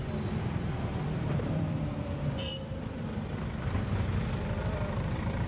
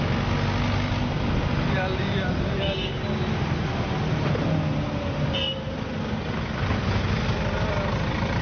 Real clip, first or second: second